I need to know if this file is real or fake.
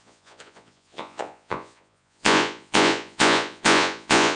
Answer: fake